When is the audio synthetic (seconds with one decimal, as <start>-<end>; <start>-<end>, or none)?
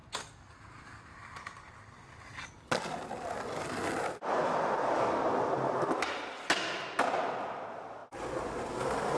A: none